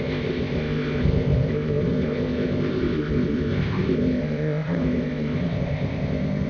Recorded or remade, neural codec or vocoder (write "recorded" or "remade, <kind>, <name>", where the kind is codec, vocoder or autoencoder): remade, codec, ZipCodec